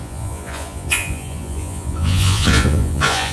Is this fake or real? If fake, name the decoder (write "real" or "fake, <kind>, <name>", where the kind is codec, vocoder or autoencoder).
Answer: fake, vocoder, Vocos